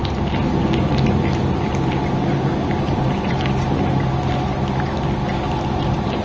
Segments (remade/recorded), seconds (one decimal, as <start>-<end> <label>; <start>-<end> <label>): 0.0-6.2 recorded